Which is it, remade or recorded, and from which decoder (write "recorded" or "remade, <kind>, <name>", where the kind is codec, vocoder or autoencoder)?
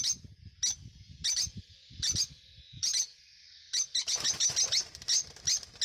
recorded